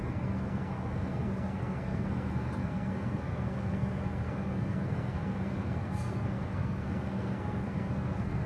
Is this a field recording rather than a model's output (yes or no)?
no